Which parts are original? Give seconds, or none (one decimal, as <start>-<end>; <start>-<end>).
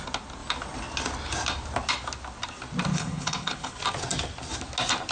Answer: 0.0-2.9; 3.8-5.1